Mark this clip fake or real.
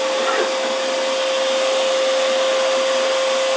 real